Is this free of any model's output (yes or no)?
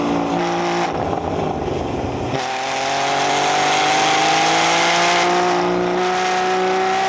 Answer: yes